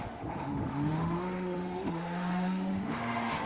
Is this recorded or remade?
remade